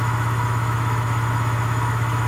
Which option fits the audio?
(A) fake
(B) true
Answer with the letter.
A